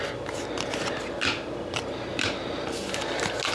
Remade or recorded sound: recorded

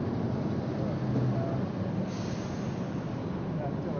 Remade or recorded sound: recorded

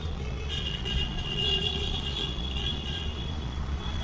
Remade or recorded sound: remade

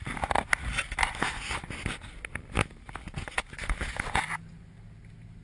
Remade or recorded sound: recorded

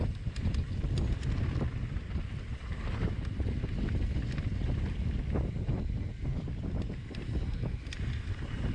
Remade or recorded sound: recorded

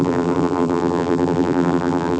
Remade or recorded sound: remade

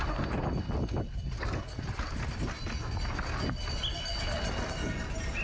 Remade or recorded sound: recorded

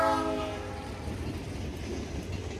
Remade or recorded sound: recorded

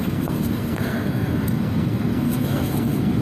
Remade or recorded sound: remade